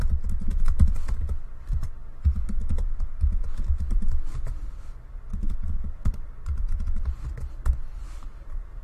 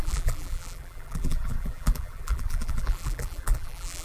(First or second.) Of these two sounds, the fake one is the second